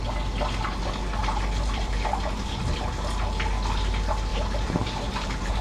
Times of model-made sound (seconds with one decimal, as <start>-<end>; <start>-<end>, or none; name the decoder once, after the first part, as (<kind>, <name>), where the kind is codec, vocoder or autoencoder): 1.2-2.6 (vocoder, BigVGAN v2); 4.3-5.6